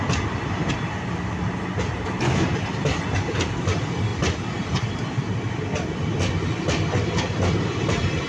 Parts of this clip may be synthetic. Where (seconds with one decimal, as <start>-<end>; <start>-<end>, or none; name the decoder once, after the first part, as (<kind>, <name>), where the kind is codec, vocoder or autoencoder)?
none